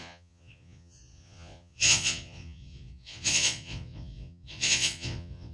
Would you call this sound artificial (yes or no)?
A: yes